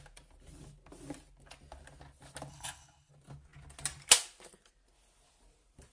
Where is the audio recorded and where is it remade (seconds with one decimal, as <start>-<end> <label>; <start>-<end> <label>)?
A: 0.0-2.5 recorded; 2.5-3.1 remade; 3.1-5.9 recorded